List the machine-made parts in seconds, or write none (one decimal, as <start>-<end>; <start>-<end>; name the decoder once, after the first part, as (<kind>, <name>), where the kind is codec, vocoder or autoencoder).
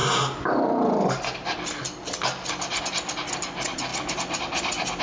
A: none